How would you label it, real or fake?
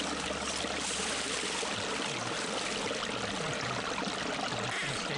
real